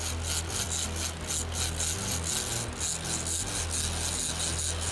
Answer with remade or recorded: recorded